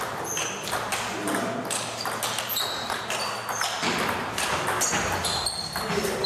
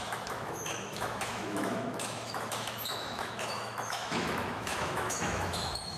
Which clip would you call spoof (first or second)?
second